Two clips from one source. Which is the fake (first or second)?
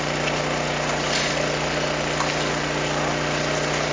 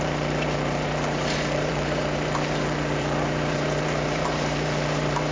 second